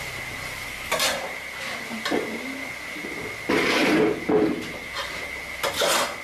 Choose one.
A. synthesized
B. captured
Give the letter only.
B